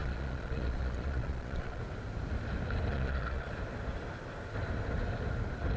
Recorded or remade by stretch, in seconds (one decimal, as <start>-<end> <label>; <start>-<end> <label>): 0.0-1.8 remade; 1.8-2.9 recorded; 2.9-3.5 remade; 3.5-5.8 recorded